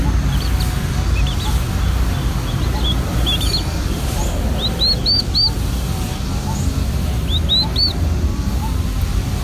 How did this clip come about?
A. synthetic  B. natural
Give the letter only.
B